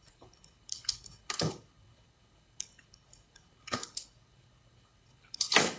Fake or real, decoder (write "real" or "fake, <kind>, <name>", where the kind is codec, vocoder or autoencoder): fake, codec, HILCodec